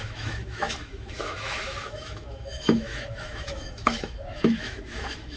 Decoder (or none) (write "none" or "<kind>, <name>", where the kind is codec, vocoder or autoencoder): autoencoder, DAC-VAE